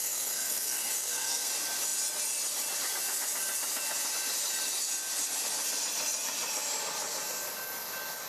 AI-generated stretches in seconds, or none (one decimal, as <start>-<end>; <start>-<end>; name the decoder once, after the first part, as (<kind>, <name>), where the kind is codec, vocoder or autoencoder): 0.0-1.5 (codec, SNAC)